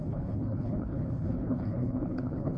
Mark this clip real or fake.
fake